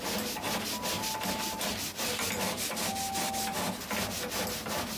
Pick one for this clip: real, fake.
real